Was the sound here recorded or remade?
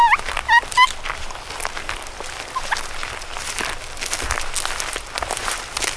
recorded